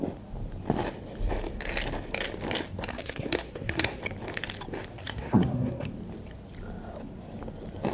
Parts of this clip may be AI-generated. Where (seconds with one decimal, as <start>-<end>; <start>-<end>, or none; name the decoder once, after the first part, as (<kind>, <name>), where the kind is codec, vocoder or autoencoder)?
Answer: 2.9-4.0 (codec, SNAC); 4.9-5.9